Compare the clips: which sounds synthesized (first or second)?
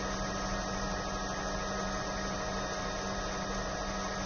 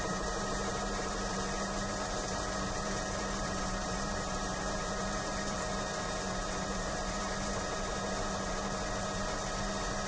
second